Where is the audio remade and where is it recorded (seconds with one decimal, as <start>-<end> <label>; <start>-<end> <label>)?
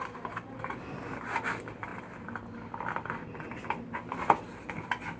0.0-5.2 recorded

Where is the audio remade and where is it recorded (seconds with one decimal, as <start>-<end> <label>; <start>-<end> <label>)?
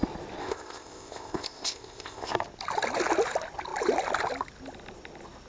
0.0-0.4 recorded; 0.4-2.3 remade; 2.3-5.5 recorded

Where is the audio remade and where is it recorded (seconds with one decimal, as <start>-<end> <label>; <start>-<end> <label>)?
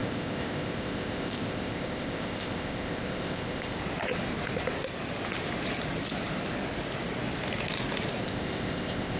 0.0-3.8 remade; 3.8-8.2 recorded; 8.2-9.2 remade